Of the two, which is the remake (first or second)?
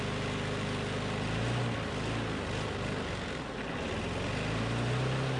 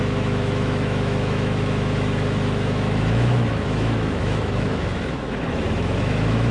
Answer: second